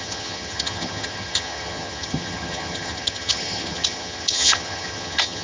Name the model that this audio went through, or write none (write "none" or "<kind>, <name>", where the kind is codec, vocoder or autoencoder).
vocoder, HiFi-GAN